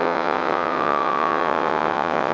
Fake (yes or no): yes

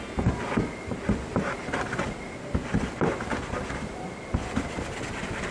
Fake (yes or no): no